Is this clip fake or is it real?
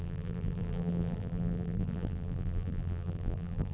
fake